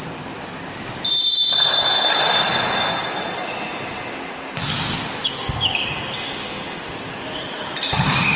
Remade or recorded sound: recorded